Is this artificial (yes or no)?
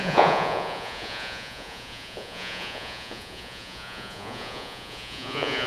yes